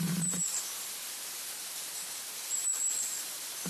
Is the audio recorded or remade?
remade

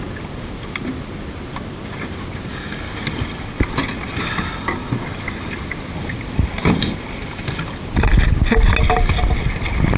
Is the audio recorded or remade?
recorded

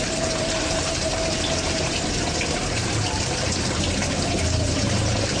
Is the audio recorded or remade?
remade